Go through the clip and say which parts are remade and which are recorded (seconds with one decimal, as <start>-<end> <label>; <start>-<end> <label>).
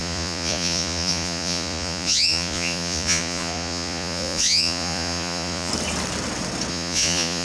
0.0-5.7 remade; 5.7-6.7 recorded; 6.7-7.4 remade